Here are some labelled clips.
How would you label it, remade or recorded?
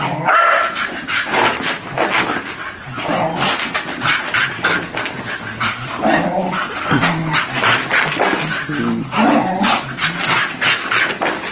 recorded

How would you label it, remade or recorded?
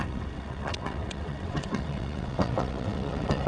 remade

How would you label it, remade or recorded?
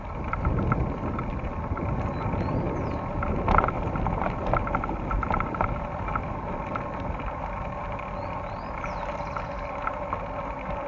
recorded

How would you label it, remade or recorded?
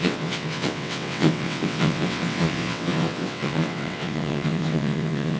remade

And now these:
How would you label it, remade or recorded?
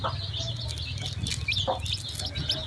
recorded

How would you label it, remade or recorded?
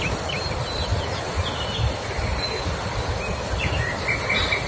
recorded